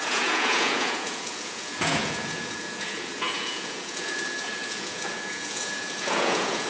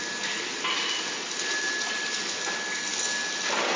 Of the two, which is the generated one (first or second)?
first